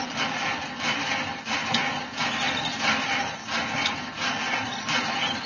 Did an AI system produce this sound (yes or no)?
no